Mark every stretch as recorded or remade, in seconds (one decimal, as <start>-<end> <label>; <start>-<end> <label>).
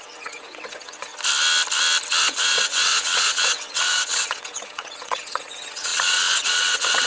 0.0-1.1 remade; 1.1-2.2 recorded; 2.2-7.1 remade